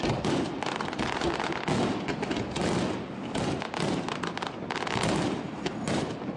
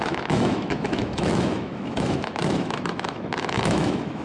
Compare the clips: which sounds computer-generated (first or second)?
second